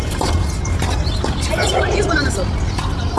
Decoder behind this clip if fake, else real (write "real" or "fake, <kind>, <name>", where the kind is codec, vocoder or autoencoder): real